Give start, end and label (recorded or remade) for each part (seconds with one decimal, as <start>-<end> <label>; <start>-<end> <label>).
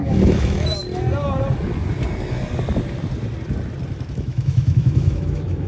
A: 0.0-0.7 remade; 0.7-4.1 recorded; 4.1-5.7 remade